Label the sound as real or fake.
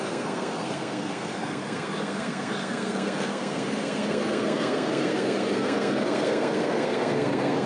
fake